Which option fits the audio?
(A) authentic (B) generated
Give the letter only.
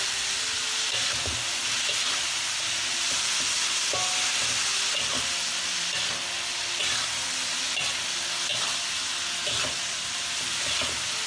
A